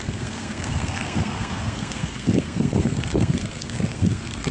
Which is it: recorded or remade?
remade